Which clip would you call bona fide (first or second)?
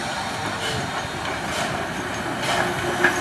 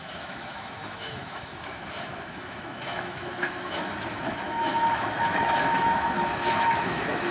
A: first